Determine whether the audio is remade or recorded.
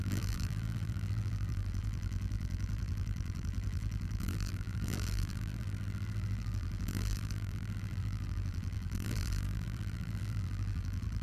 remade